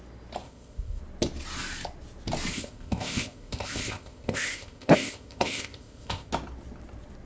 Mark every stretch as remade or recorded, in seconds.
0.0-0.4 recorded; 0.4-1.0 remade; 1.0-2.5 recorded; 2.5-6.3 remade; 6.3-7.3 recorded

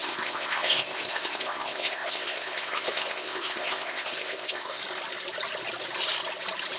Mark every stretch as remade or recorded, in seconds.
0.0-4.8 remade; 4.8-6.8 recorded

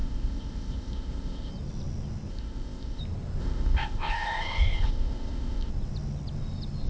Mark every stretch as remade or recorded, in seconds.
0.0-1.5 remade; 1.5-2.3 recorded; 2.3-3.0 remade; 3.0-3.4 recorded; 3.4-5.7 remade; 5.7-6.9 recorded

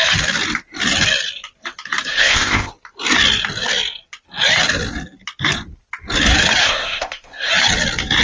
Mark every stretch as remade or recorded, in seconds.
0.0-2.1 recorded; 2.1-2.7 remade; 2.7-6.6 recorded; 6.6-7.5 remade; 7.5-8.2 recorded

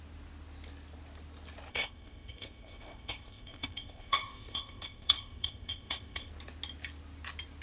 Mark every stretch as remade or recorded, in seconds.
0.0-1.7 recorded; 1.7-6.3 remade; 6.3-7.6 recorded

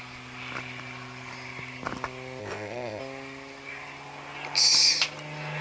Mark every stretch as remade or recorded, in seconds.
0.0-2.4 recorded; 2.4-3.0 remade; 3.0-5.6 recorded